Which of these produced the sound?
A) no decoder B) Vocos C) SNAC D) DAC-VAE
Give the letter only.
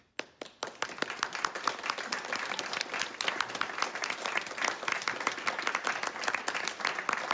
A